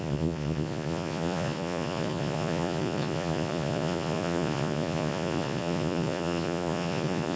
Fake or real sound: fake